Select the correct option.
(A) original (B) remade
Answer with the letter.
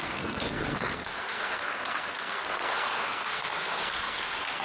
B